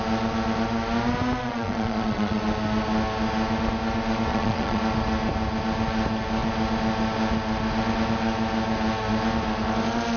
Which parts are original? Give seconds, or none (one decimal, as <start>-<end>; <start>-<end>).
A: 0.0-1.4; 2.4-4.3; 4.8-10.2